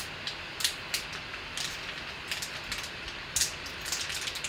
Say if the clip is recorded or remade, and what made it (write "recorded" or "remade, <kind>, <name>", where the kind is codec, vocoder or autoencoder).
recorded